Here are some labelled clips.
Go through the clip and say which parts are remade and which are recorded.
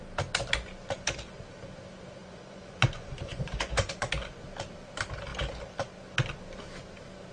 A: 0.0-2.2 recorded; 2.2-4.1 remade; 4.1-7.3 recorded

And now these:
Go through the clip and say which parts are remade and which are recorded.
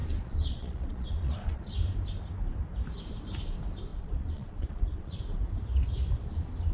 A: 0.0-1.6 remade; 1.6-3.9 recorded; 3.9-5.2 remade; 5.2-6.7 recorded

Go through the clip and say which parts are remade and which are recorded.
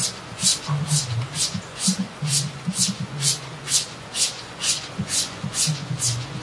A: 0.0-0.5 remade; 0.5-1.4 recorded; 1.4-6.4 remade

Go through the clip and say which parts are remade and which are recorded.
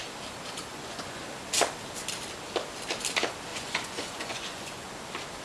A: 0.0-0.7 recorded; 0.7-1.2 remade; 1.2-3.5 recorded; 3.5-4.9 remade; 4.9-5.4 recorded